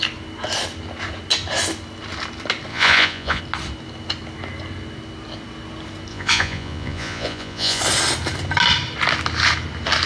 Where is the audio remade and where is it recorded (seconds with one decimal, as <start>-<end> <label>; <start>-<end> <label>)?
0.0-2.7 recorded; 2.7-3.4 remade; 3.4-6.1 recorded; 6.1-7.8 remade; 7.8-10.1 recorded